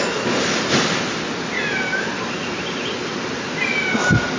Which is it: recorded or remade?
recorded